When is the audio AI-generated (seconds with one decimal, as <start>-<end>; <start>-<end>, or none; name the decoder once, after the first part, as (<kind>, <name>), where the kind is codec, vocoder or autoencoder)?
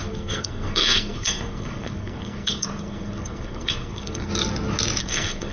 0.0-4.3 (codec, SNAC); 5.0-5.5